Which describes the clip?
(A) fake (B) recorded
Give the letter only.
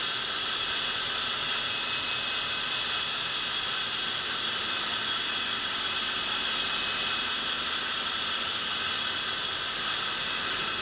B